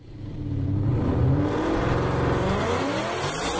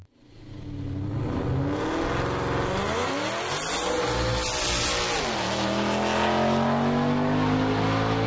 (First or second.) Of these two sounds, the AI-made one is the first